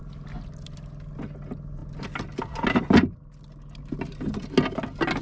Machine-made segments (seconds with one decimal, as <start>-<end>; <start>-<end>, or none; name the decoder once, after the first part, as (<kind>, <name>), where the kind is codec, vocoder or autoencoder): none